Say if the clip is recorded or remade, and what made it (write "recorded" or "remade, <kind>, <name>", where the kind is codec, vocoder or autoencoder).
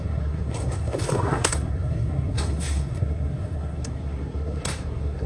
remade, codec, SNAC